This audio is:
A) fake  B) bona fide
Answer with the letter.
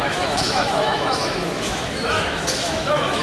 A